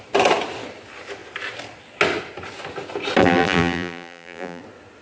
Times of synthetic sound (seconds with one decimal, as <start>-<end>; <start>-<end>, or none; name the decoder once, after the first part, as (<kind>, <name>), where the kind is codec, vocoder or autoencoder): 3.2-4.6 (vocoder, BigVGAN v2)